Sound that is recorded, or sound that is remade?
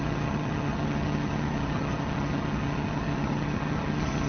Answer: remade